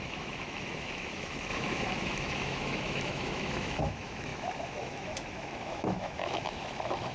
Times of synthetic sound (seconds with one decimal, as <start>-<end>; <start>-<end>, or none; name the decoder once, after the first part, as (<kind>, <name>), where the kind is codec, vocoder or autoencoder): 0.0-7.1 (autoencoder, DAC-VAE)

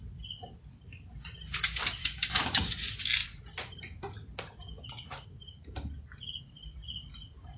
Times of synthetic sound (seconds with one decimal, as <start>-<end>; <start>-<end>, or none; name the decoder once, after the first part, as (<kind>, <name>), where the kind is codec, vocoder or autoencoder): 2.0-2.7 (codec, DAC)

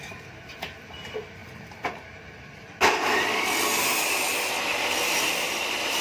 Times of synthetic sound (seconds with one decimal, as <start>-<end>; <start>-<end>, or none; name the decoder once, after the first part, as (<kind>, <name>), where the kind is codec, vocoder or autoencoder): none